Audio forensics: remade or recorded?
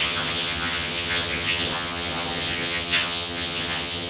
remade